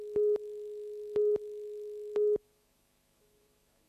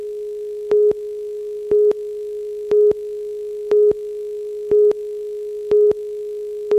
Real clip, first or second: second